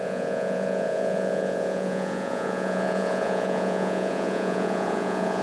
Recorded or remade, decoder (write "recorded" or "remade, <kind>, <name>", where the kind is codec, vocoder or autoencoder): remade, vocoder, Vocos